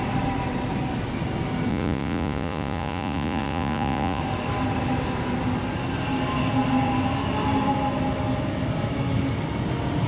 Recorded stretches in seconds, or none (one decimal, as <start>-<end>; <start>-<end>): 0.0-1.7; 4.2-10.1